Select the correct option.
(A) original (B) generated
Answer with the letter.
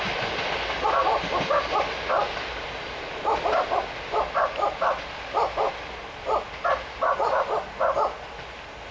A